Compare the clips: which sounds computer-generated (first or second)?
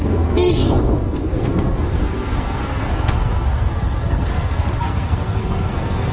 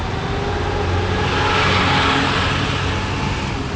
first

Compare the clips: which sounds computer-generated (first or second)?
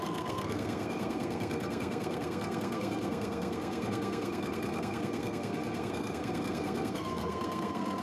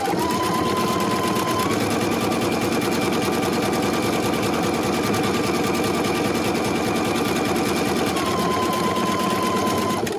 first